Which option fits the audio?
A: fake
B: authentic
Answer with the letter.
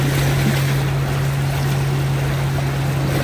B